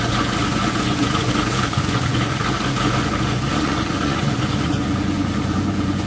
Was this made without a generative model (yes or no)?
no